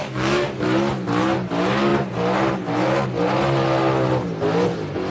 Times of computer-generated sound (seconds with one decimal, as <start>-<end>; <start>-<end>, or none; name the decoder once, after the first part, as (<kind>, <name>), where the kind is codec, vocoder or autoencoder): 0.0-0.6 (codec, DAC)